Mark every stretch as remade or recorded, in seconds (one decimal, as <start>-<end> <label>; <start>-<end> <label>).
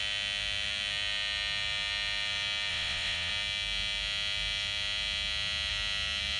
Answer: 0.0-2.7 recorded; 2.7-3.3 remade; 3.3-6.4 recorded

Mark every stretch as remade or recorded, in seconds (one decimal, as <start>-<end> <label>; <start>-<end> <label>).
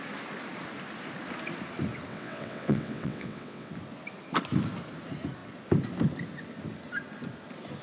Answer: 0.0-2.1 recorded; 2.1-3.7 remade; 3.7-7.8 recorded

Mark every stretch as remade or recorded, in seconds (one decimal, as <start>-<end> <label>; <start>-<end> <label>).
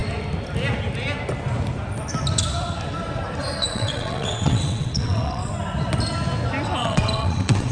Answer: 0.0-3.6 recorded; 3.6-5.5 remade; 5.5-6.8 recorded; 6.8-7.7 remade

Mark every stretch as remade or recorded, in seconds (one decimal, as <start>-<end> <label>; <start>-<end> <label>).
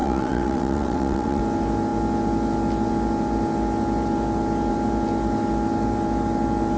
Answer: 0.0-1.4 remade; 1.4-6.8 recorded